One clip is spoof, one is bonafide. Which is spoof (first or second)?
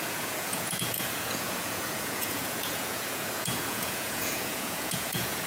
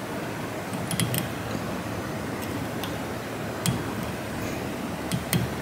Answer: first